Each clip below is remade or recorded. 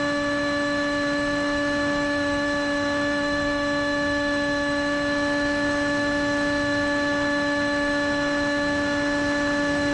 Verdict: remade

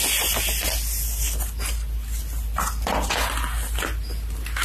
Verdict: recorded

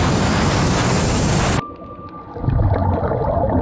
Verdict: recorded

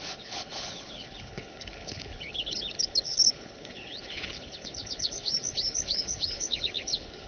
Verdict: remade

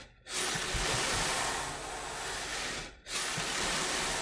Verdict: recorded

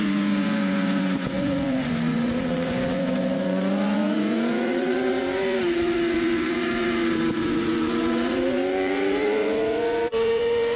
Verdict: remade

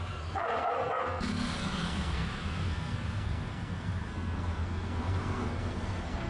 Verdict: remade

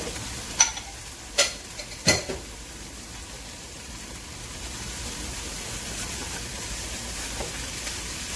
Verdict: remade